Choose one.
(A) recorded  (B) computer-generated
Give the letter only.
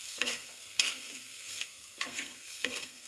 B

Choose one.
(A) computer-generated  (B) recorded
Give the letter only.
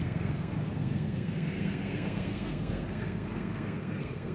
A